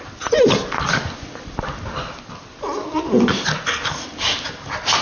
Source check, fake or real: real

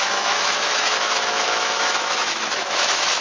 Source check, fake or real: fake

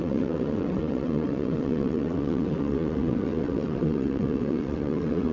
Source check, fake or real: fake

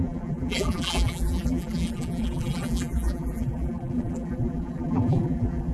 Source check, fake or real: fake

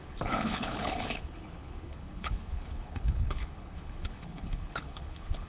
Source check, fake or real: fake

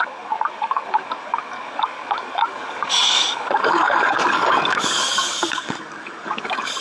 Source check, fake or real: fake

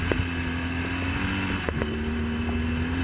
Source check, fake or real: real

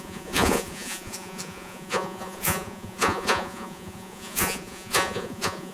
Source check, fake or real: fake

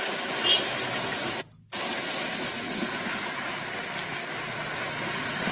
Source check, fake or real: real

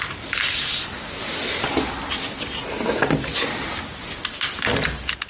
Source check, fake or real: real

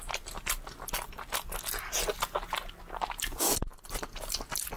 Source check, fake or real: real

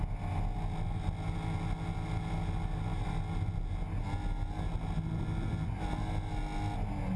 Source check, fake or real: real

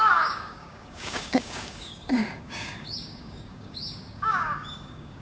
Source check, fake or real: fake